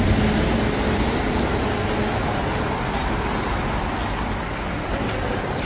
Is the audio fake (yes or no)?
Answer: no